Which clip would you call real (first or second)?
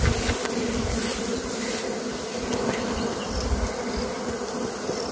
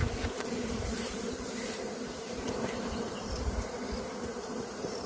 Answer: first